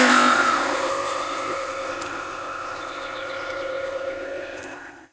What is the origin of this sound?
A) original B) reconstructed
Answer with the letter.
B